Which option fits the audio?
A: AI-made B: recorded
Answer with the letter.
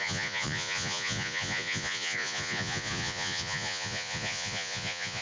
A